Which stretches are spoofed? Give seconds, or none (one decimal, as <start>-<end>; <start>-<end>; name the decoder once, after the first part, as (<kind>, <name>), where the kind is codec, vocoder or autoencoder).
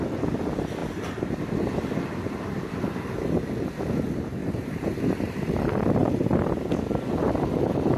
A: 0.8-1.4 (vocoder, BigVGAN v2); 4.4-5.5; 6.0-6.5